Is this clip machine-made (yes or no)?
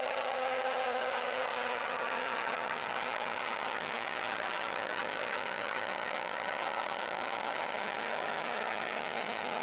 yes